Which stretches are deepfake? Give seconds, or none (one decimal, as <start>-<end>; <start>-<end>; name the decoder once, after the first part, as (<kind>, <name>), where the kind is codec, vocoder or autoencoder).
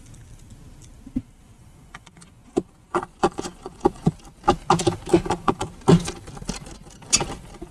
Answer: 1.4-4.1 (vocoder, Vocos); 5.1-5.7